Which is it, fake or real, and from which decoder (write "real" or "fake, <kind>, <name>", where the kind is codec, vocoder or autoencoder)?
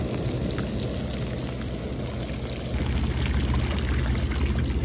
real